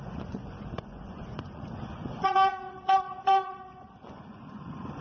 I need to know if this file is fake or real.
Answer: fake